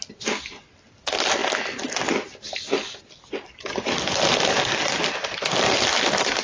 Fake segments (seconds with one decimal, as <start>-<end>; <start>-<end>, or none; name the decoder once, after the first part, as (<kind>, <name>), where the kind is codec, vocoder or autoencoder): none